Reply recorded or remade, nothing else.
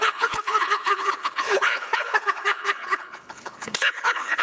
remade